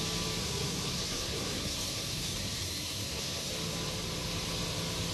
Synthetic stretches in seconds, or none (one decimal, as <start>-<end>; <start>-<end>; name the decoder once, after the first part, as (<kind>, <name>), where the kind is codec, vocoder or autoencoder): 0.4-3.5 (codec, SNAC)